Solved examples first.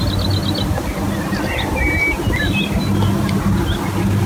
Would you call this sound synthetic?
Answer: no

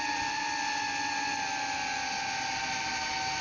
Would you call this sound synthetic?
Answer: no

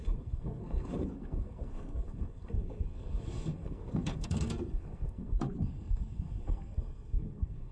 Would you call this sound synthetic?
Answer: yes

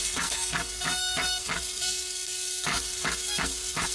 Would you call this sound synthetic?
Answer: yes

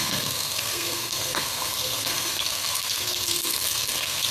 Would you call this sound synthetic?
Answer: yes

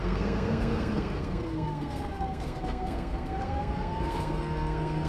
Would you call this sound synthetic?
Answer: yes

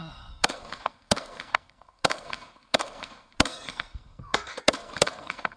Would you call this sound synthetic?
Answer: yes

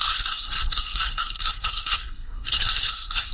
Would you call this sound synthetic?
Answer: yes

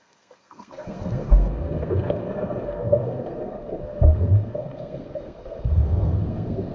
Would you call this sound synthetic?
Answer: yes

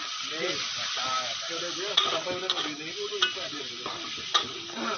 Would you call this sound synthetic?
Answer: no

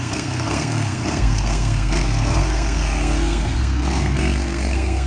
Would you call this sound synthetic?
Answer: yes